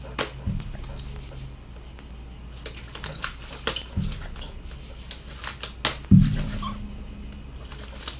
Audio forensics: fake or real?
real